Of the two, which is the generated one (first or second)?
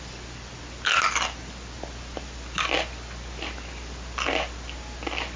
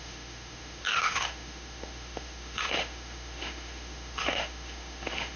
second